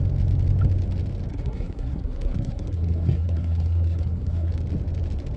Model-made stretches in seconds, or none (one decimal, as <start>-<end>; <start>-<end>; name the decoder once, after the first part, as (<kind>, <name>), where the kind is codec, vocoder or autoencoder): 1.3-4.5 (codec, SNAC)